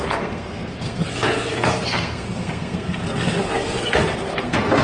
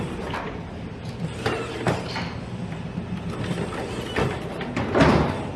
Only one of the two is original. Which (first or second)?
second